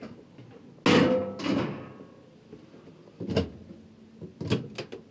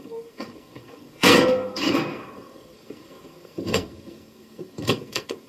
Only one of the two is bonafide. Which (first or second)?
first